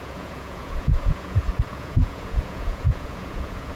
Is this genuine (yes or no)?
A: no